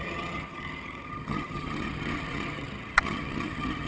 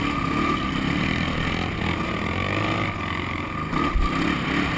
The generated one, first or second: first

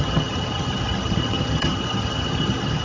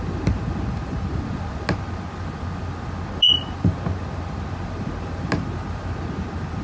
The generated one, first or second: first